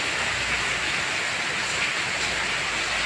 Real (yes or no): yes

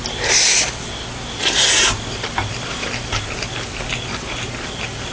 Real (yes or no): yes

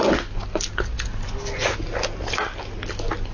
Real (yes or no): yes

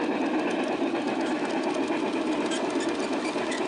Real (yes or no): yes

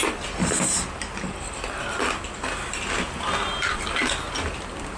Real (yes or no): yes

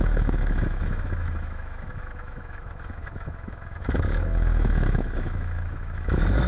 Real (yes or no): no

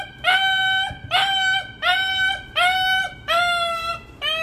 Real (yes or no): yes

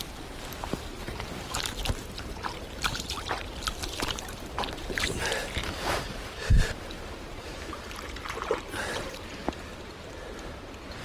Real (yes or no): no